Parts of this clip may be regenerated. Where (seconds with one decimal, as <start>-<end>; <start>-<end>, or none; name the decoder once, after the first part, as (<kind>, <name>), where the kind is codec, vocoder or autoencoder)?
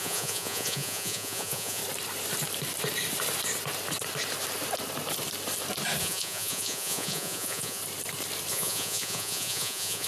0.0-1.8 (vocoder, Vocos); 6.0-7.8; 8.5-10.1